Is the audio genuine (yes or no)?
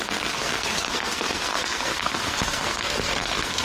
no